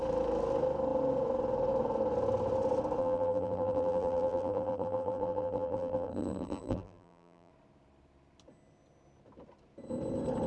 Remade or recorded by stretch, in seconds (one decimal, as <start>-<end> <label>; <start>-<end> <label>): 0.0-3.0 recorded; 3.0-7.5 remade; 7.5-10.5 recorded